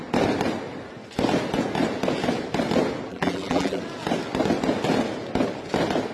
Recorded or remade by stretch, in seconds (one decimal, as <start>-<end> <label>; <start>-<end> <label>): 0.0-3.1 recorded; 3.1-3.8 remade; 3.8-6.1 recorded